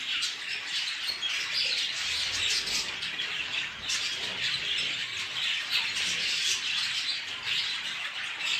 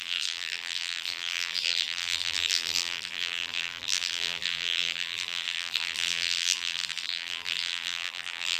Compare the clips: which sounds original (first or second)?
first